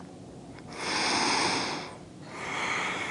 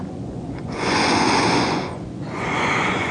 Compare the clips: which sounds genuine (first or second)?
first